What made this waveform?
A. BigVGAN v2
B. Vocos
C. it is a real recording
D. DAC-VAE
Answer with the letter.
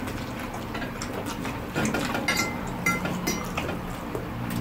C